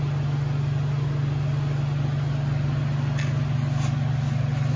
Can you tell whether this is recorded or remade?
recorded